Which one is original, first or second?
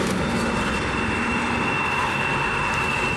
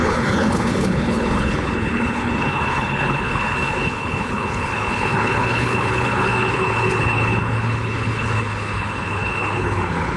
first